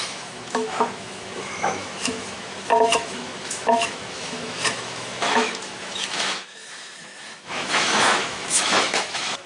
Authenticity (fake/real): fake